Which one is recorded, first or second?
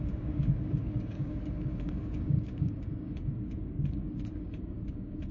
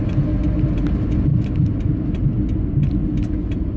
second